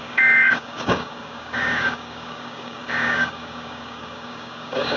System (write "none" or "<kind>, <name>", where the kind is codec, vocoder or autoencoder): codec, DAC